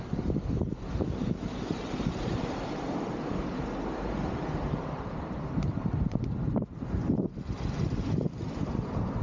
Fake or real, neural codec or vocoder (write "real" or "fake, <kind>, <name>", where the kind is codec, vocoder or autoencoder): fake, vocoder, BigVGAN v2